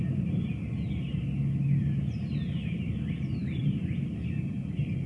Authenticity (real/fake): real